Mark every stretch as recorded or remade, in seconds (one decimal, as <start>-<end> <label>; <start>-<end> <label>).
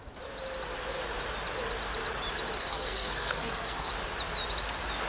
0.0-2.6 recorded; 2.6-3.9 remade; 3.9-5.1 recorded